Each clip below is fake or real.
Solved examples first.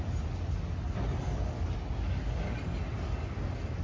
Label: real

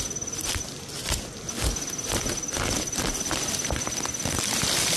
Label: real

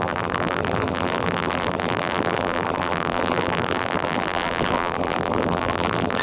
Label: fake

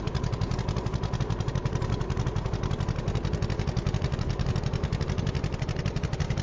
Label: real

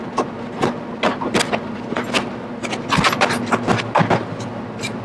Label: real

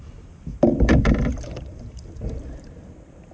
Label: fake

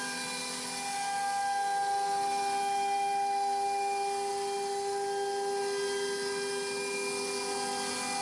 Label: real